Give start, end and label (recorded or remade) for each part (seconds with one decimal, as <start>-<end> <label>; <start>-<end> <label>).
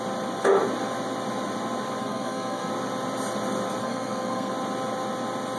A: 0.0-2.0 recorded; 2.0-2.7 remade; 2.7-3.8 recorded; 3.8-4.5 remade; 4.5-5.6 recorded